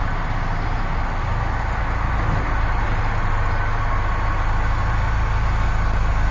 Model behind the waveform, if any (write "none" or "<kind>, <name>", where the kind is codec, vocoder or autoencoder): none